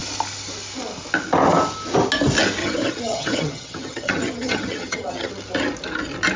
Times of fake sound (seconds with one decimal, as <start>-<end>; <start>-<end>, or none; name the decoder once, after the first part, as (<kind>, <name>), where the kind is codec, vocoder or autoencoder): 2.6-5.3 (vocoder, HiFi-GAN)